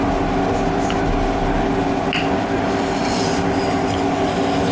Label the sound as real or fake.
real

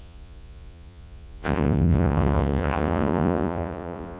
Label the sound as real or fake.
fake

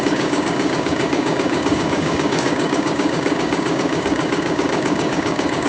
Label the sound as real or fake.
fake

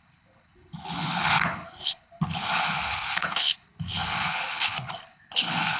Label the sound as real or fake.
fake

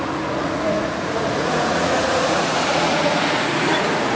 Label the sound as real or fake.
fake